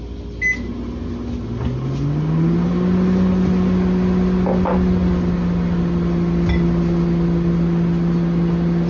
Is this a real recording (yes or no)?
yes